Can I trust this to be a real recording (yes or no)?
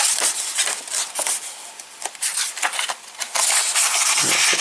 yes